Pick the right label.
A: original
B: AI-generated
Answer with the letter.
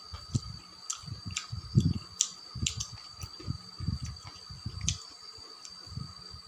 A